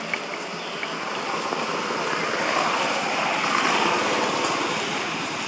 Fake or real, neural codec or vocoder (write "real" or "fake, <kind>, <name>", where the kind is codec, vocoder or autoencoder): real